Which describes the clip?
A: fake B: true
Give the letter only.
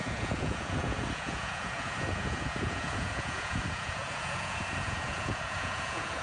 A